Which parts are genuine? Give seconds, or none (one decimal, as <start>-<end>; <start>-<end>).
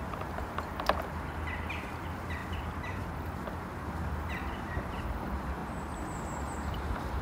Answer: 0.7-1.7